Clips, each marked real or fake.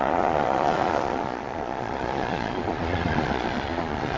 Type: fake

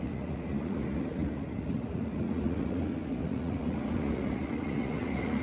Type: fake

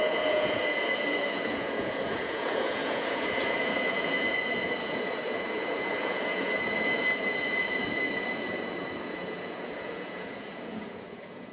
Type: fake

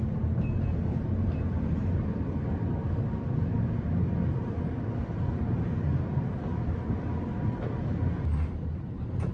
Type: real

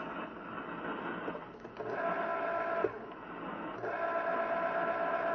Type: real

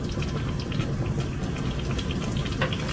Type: real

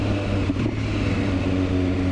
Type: real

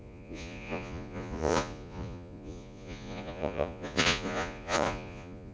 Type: fake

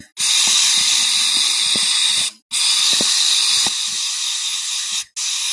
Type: real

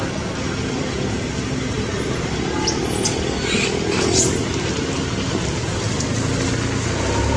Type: real